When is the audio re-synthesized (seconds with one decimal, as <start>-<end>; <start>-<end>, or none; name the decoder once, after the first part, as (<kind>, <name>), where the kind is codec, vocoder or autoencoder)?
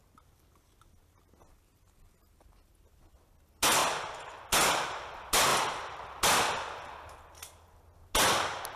none